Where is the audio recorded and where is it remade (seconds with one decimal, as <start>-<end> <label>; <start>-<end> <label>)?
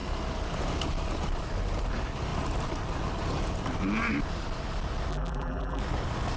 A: 0.0-5.1 recorded; 5.1-5.8 remade; 5.8-6.4 recorded